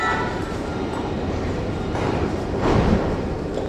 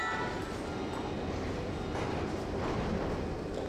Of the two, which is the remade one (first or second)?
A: first